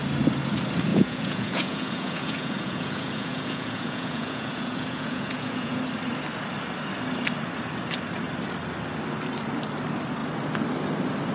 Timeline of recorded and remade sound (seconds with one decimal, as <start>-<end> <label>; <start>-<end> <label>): 0.0-0.9 recorded; 0.9-5.8 remade; 5.8-11.3 recorded